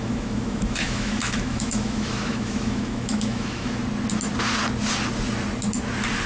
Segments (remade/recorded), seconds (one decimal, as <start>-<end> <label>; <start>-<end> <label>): 0.0-3.8 remade; 3.8-6.3 recorded